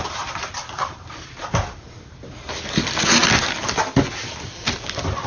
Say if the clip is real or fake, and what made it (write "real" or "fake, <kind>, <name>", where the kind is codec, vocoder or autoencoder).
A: real